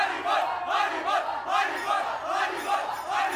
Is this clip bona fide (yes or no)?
yes